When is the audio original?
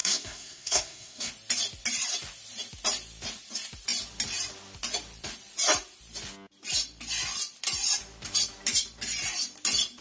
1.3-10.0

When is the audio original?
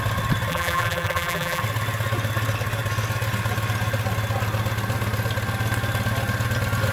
0.0-0.5; 1.6-6.9